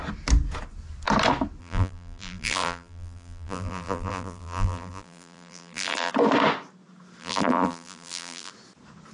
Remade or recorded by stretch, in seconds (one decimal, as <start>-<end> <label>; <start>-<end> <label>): 0.0-1.6 recorded; 1.6-6.1 remade; 6.1-7.2 recorded; 7.2-8.5 remade; 8.5-9.1 recorded